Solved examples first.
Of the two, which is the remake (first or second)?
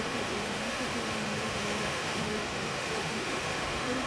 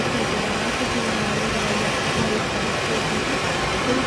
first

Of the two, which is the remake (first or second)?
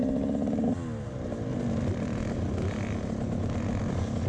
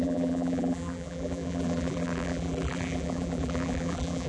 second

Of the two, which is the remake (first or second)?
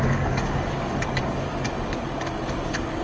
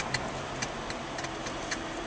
first